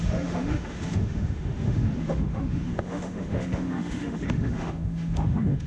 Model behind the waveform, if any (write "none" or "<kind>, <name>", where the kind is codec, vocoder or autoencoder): autoencoder, DAC-VAE